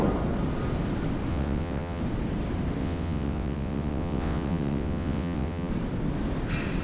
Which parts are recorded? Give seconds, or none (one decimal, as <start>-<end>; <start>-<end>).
0.0-1.3; 2.0-2.8; 5.7-6.8